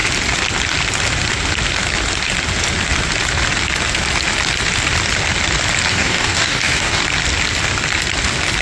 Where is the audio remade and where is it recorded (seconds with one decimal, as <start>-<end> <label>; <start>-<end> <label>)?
0.0-5.9 recorded; 5.9-7.0 remade; 7.0-8.6 recorded